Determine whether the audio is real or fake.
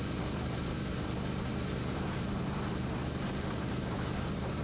fake